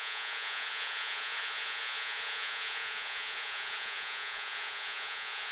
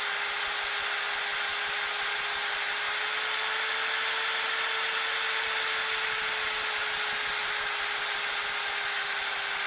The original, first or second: second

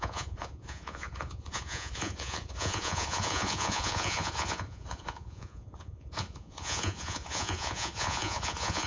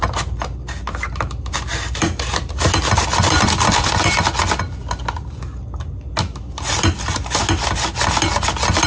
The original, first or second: second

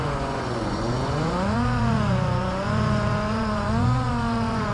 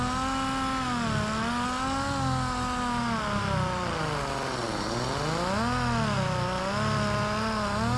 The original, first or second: second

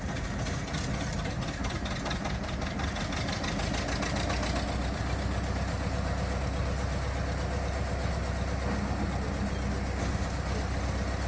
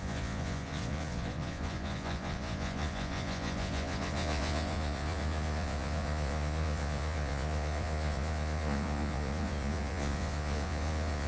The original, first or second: first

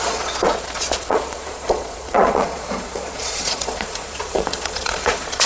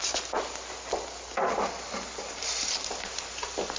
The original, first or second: second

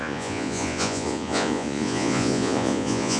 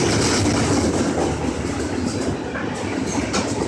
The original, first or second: second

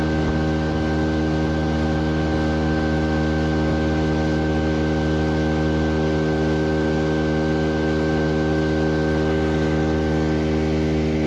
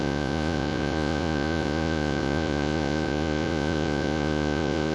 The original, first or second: first